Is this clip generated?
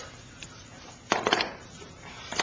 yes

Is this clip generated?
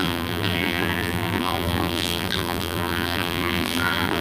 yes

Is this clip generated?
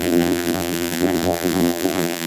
yes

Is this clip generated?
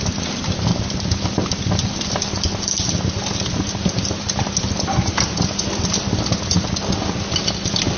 no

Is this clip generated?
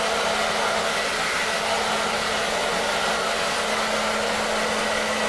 no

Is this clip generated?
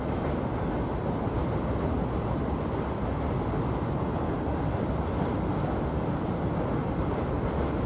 no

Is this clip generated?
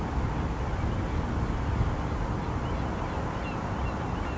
no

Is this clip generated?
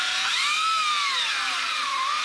yes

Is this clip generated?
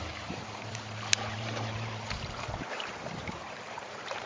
yes